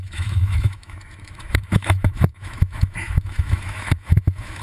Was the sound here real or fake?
fake